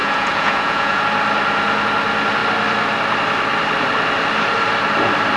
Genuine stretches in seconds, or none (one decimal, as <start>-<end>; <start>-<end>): 1.0-5.4